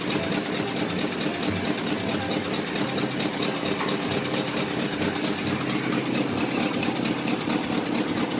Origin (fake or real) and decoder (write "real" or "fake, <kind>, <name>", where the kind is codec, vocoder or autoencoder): real